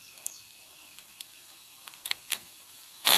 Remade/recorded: remade